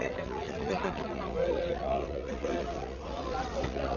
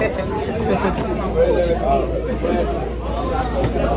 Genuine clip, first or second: second